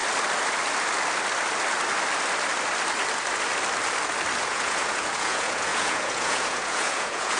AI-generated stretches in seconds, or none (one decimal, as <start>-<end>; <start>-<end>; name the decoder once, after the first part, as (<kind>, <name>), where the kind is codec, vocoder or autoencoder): 4.4-7.4 (vocoder, Vocos)

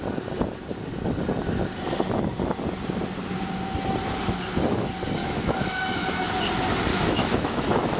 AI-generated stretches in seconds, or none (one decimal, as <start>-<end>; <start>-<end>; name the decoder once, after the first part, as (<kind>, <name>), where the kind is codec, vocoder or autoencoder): 5.2-6.3 (autoencoder, DAC-VAE); 6.9-8.0

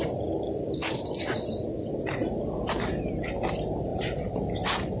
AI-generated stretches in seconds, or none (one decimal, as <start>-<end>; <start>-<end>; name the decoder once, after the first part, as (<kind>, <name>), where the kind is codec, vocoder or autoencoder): 3.9-5.0 (vocoder, BigVGAN v2)

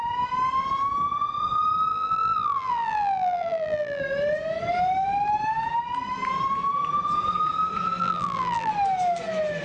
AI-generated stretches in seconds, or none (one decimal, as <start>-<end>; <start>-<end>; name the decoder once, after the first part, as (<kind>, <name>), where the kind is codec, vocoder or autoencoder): 1.9-4.0 (vocoder, BigVGAN v2); 8.0-8.7

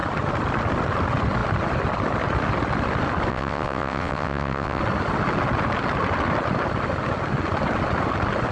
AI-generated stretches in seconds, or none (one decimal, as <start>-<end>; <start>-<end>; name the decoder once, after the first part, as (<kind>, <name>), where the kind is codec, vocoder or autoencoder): 3.3-4.8 (vocoder, WaveNeXt)

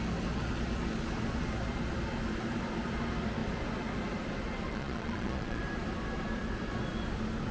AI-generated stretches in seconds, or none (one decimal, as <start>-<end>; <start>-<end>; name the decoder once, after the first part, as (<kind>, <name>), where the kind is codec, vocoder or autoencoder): 4.7-5.6 (vocoder, Vocos)